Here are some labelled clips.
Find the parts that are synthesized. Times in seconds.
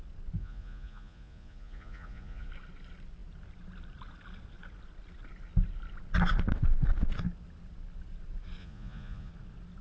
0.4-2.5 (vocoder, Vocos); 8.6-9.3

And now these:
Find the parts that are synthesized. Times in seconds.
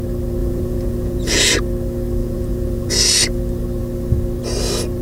0.4-1.5 (vocoder, Vocos); 2.2-2.9